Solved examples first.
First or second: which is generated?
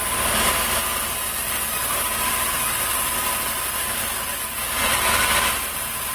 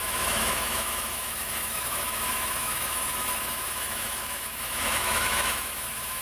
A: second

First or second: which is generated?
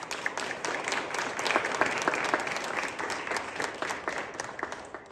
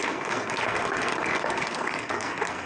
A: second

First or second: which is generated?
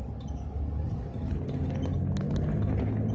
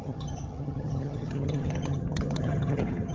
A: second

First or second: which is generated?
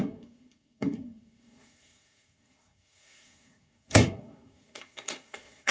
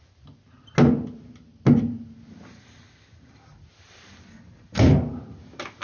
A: first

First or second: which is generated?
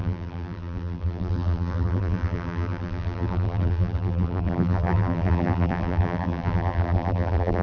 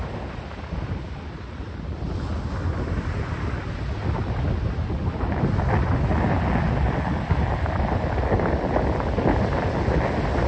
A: first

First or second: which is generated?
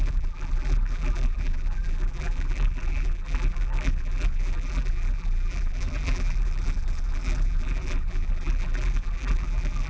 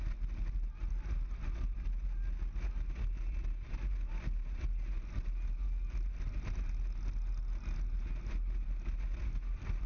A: first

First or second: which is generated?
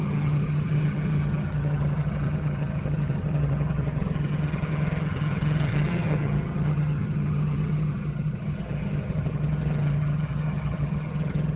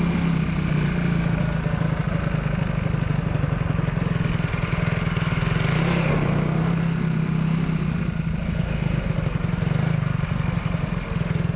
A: first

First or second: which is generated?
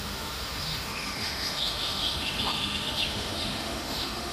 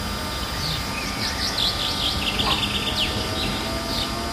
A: first